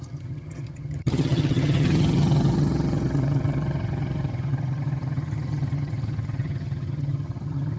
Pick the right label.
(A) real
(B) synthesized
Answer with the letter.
B